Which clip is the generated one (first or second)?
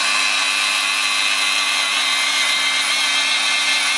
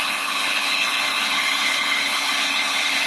second